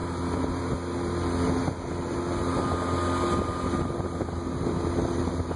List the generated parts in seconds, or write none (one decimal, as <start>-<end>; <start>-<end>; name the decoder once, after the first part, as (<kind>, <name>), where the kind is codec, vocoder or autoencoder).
none